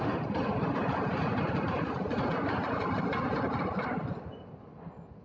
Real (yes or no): yes